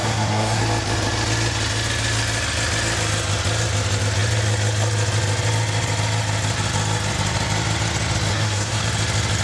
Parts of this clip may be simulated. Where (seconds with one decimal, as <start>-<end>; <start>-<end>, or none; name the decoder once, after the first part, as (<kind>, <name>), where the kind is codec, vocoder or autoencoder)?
0.0-0.6 (codec, SNAC); 8.3-8.8